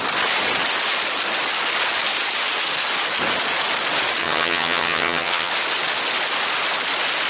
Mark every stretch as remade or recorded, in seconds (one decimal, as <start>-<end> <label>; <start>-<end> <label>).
0.0-4.2 recorded; 4.2-5.5 remade; 5.5-7.3 recorded